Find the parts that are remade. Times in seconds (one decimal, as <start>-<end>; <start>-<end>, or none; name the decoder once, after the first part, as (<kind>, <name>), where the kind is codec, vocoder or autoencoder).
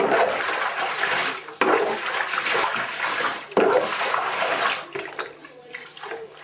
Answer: 3.3-3.8 (vocoder, BigVGAN v2)